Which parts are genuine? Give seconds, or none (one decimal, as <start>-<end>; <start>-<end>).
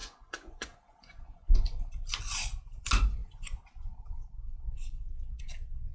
1.8-5.9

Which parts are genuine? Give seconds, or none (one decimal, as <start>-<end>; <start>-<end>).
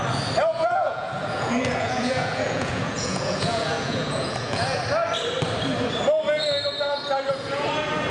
0.0-0.5; 4.8-8.1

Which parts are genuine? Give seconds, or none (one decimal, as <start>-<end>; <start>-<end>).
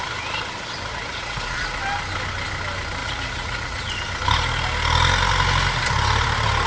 0.0-0.9; 1.8-3.0; 3.9-6.7